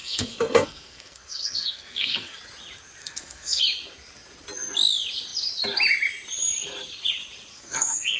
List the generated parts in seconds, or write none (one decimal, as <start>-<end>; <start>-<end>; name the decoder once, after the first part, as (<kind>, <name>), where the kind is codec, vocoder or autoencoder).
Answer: 0.0-2.4 (codec, SNAC); 3.0-3.6; 7.5-8.2